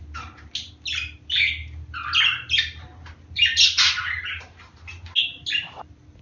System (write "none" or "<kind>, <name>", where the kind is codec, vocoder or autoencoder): none